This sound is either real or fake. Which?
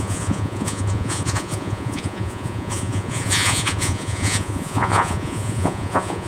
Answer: fake